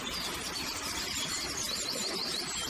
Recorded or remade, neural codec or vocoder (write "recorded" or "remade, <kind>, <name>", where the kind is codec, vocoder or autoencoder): remade, vocoder, BigVGAN v2